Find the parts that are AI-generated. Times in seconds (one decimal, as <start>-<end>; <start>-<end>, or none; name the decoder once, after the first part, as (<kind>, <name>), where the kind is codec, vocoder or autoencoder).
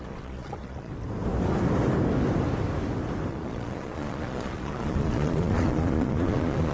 0.0-0.9 (vocoder, Vocos); 3.3-6.7